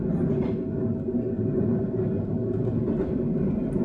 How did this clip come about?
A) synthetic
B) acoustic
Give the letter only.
B